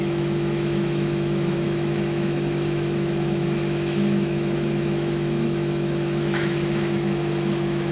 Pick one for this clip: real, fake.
fake